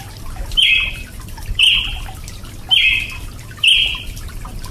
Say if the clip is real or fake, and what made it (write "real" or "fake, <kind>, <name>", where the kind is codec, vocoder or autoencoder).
real